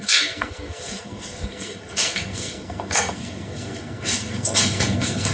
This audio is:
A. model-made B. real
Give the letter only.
A